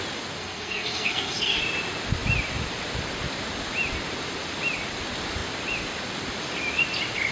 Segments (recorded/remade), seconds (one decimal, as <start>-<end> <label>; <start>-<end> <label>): 0.0-0.4 recorded; 0.4-1.6 remade; 1.6-7.3 recorded